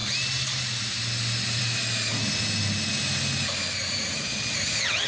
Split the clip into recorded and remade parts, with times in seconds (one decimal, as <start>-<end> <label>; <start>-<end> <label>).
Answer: 0.0-5.1 recorded